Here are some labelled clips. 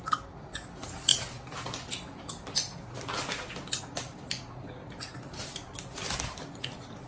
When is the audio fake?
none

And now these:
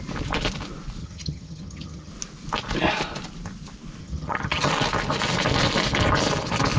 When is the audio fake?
1.0-2.1 (vocoder, HiFi-GAN); 4.0-4.7

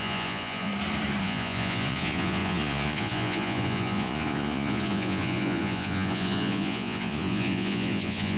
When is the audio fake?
0.0-0.7 (vocoder, Vocos); 1.2-8.4

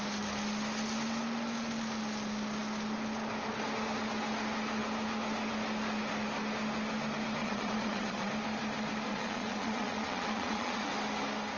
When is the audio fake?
7.4-8.3 (vocoder, Vocos); 9.1-10.9